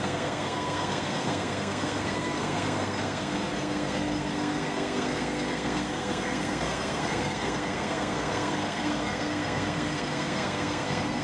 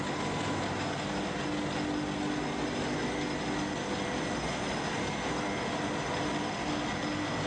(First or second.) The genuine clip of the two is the second